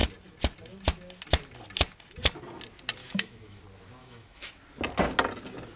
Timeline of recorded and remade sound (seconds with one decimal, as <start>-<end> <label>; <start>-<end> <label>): 0.0-3.0 recorded; 3.0-3.6 remade; 3.6-4.0 recorded; 4.0-4.5 remade; 4.5-5.8 recorded